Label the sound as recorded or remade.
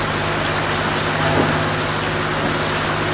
recorded